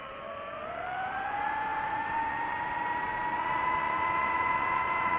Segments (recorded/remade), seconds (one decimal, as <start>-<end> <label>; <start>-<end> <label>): 0.0-5.2 remade